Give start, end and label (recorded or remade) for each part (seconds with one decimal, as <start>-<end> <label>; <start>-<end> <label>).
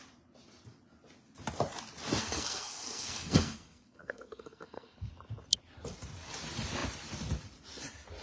0.0-2.2 recorded; 2.2-5.1 remade; 5.1-8.2 recorded